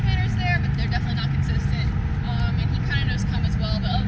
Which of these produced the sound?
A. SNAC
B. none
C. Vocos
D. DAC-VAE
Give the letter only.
B